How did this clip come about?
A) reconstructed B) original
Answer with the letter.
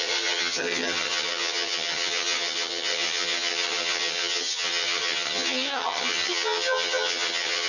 A